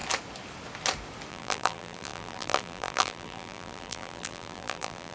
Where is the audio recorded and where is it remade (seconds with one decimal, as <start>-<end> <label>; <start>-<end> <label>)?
0.0-1.3 recorded; 1.3-5.1 remade